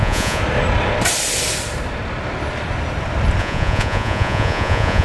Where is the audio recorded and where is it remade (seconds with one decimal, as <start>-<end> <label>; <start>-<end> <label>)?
0.0-0.4 remade; 0.4-3.4 recorded; 3.4-5.0 remade